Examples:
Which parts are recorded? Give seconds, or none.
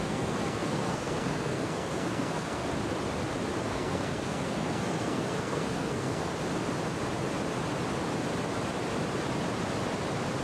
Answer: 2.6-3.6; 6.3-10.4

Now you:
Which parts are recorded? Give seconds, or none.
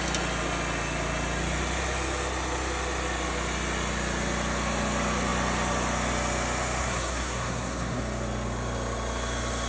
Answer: 0.0-6.8; 8.0-9.7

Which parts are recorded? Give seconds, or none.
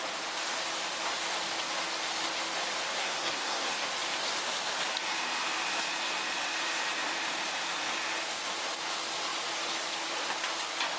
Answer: 0.0-3.0; 3.8-11.0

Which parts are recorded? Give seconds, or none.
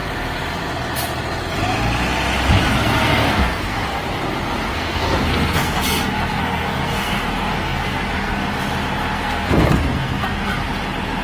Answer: 0.0-2.7; 3.9-4.7; 8.5-9.0; 10.7-11.2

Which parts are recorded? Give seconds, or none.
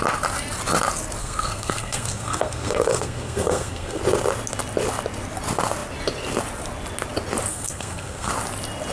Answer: 0.0-1.2; 4.0-7.5; 8.3-8.9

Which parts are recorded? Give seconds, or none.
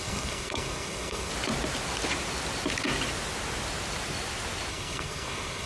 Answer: 1.3-4.7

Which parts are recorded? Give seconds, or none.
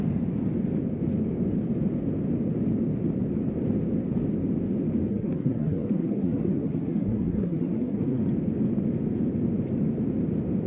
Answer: 0.0-5.1; 8.2-10.7